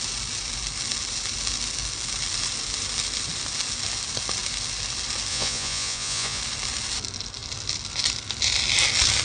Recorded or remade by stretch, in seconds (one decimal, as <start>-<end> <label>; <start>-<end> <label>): 0.0-5.3 recorded; 5.3-6.4 remade; 6.4-9.2 recorded